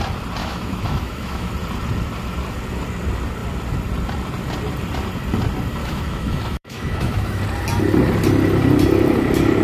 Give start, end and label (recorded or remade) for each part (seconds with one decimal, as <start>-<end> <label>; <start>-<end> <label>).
0.0-0.4 recorded; 0.4-1.5 remade; 1.5-5.8 recorded; 5.8-7.4 remade; 7.4-9.6 recorded